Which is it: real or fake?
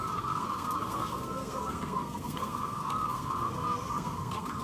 fake